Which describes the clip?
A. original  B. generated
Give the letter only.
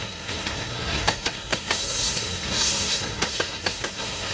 B